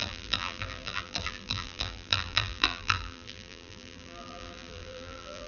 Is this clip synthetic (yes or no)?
yes